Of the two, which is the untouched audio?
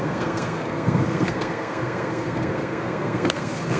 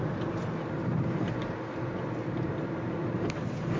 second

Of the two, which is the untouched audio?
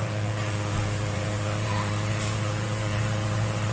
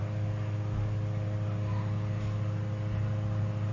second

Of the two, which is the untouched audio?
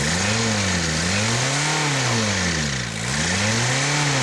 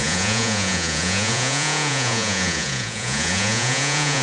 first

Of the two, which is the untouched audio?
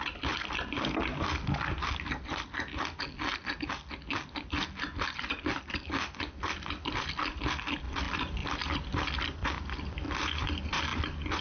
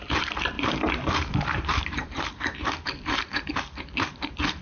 first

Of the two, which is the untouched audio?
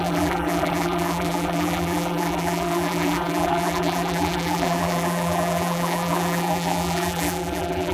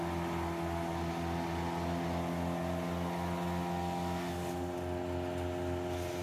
second